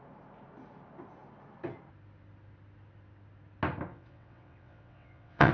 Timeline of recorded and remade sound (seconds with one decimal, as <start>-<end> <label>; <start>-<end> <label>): 0.0-3.9 recorded; 3.9-5.5 remade